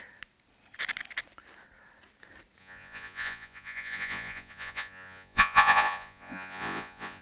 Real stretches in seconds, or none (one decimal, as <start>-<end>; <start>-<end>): 0.0-2.6